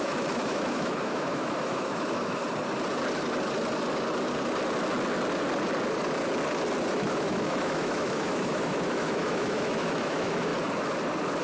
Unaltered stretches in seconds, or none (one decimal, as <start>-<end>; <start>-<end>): 2.4-6.9; 10.5-11.4